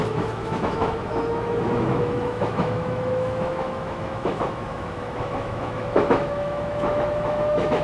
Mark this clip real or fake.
fake